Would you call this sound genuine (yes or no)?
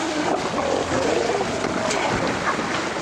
yes